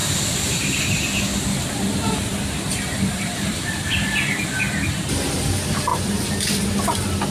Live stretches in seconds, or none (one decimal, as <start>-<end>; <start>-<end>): 0.8-2.3; 4.3-7.3